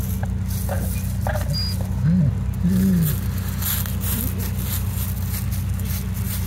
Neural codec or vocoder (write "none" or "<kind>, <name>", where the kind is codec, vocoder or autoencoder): none